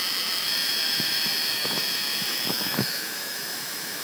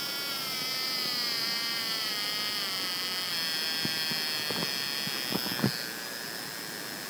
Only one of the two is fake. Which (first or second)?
first